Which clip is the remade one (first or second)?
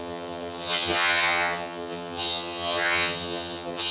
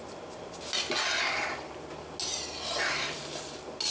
first